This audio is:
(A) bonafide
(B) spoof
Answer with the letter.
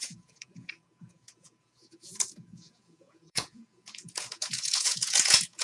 B